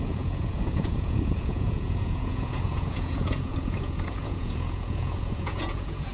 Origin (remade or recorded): remade